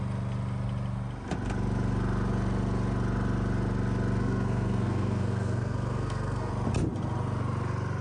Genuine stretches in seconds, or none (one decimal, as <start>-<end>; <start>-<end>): 0.0-4.2; 6.5-8.0